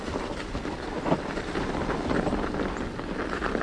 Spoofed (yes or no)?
no